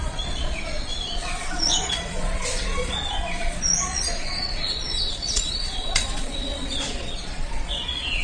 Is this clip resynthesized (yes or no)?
yes